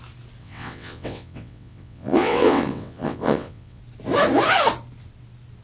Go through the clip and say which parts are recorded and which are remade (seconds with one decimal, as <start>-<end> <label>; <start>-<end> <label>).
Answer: 0.0-0.4 recorded; 0.4-3.8 remade; 3.8-5.6 recorded